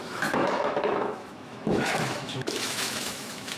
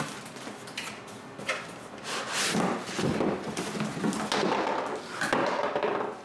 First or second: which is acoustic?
second